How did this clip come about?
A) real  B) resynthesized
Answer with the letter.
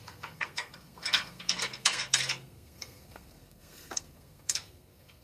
B